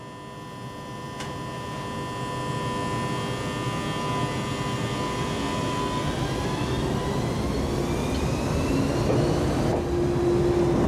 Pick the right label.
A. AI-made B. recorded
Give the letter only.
B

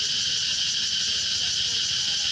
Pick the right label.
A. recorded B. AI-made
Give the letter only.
A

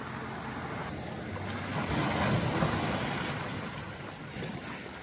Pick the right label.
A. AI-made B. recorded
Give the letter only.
B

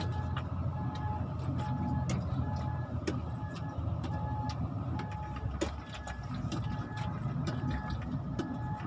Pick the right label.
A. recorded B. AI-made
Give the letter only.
A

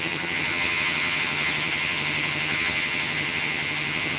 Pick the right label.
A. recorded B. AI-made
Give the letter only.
B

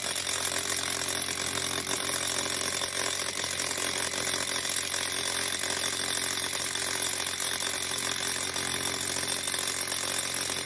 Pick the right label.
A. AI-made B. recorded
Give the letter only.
B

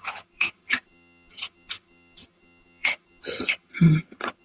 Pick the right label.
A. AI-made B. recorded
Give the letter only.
A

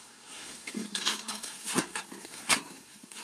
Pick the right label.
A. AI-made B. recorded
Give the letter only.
A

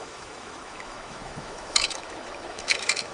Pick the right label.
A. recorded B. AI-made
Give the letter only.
B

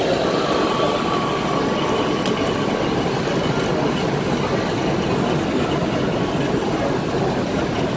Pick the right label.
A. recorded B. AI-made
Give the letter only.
A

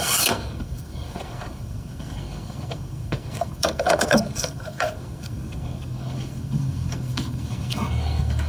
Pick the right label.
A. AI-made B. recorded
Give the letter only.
A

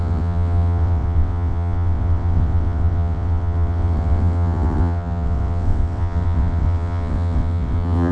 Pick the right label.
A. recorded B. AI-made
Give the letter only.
B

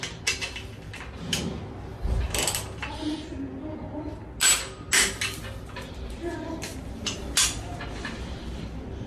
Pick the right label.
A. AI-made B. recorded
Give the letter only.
B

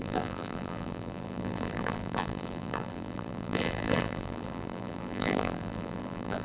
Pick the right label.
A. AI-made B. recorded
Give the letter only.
A